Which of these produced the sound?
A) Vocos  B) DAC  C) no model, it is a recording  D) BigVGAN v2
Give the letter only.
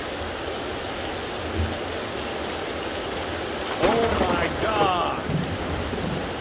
C